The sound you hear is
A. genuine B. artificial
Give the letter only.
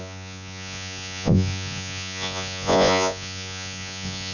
B